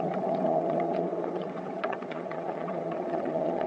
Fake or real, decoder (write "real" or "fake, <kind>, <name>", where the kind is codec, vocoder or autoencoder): fake, vocoder, WaveNeXt